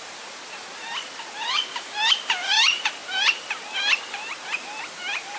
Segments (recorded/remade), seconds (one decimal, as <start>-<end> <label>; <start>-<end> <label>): 0.0-5.4 recorded